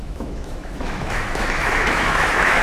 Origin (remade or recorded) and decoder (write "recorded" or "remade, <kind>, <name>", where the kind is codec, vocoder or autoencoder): remade, autoencoder, DAC-VAE